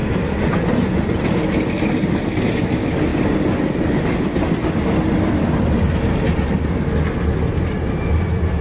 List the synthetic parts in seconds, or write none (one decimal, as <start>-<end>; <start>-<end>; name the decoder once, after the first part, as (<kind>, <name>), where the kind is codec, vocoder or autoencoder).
none